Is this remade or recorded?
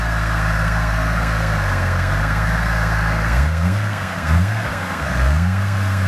remade